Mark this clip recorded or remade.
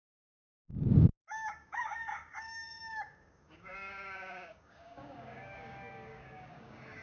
remade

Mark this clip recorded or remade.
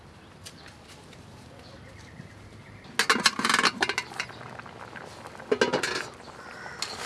recorded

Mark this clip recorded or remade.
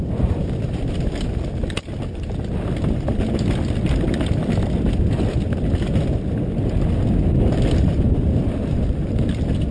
recorded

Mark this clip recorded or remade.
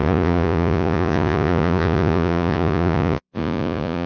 remade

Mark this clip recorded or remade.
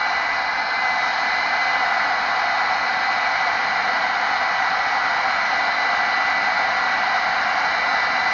recorded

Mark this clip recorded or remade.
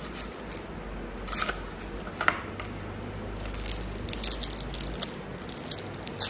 recorded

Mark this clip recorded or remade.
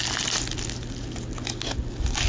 recorded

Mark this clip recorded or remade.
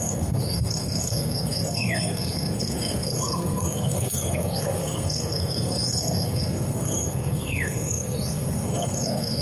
remade